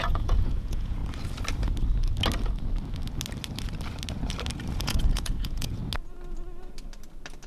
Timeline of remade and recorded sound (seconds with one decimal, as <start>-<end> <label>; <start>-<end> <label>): 0.0-1.0 remade; 1.0-4.8 recorded; 4.8-5.8 remade; 5.8-7.5 recorded